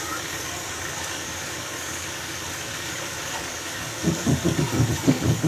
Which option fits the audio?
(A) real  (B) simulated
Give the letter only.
B